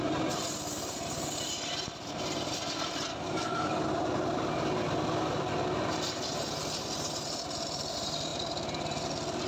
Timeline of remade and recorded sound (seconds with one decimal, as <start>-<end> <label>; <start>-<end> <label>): 0.0-3.1 recorded; 3.1-3.8 remade; 3.8-9.5 recorded